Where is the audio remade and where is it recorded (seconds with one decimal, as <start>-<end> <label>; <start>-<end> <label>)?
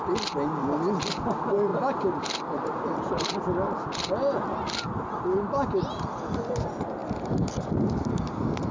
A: 0.0-8.7 recorded